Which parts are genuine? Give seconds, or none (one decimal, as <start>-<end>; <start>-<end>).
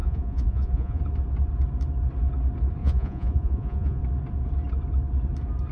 1.0-2.8; 4.0-5.7